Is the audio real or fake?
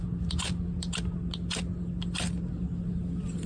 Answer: real